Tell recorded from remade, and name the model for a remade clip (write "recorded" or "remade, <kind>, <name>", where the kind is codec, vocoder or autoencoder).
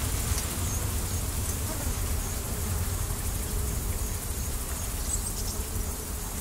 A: remade, vocoder, BigVGAN v2